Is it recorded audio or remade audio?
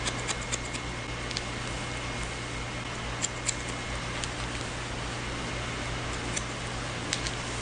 recorded